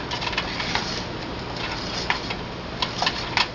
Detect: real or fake real